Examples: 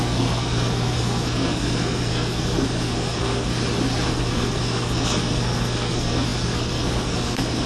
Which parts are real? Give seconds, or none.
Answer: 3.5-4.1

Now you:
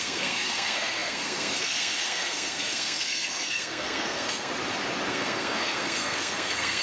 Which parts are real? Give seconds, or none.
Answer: 4.5-5.1